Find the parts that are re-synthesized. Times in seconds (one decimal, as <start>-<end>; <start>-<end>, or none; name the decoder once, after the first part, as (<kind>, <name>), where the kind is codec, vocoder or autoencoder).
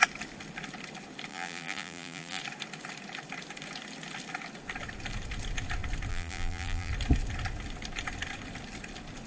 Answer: 1.3-2.4 (vocoder, BigVGAN v2); 6.1-6.9